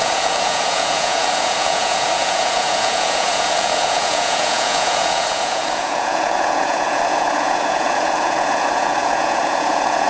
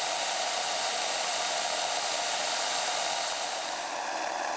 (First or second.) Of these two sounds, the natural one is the second